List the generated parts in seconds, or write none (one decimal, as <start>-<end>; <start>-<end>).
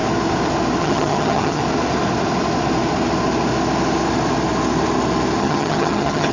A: 0.8-1.6; 5.4-6.3